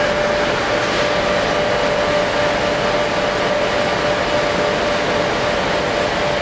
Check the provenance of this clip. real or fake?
real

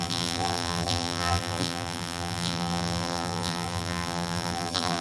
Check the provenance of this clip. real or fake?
fake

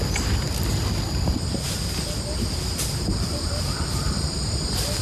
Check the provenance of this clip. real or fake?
real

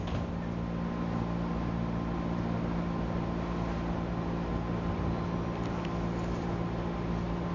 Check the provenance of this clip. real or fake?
real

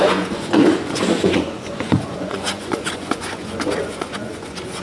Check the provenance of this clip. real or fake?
fake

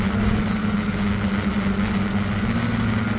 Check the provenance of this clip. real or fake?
real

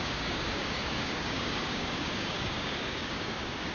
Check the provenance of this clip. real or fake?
fake